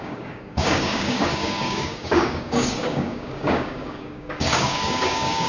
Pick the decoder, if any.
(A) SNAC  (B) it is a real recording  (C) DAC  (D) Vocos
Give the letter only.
C